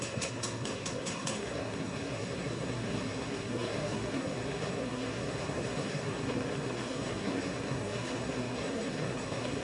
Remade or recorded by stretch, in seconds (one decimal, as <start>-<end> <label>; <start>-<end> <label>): 0.0-9.6 remade